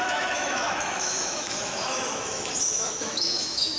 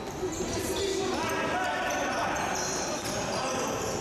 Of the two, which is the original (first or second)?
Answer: second